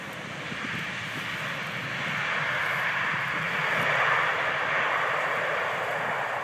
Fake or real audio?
real